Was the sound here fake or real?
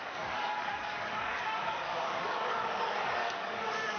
fake